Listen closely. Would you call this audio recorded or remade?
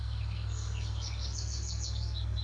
remade